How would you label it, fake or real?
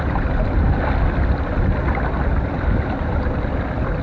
real